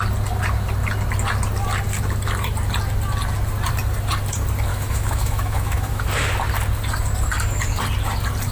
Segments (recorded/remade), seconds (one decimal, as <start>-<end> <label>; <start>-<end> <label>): 0.0-4.7 recorded; 4.7-6.0 remade; 6.0-8.5 recorded